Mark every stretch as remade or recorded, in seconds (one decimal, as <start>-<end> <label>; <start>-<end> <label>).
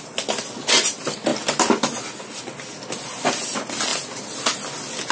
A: 0.0-5.1 recorded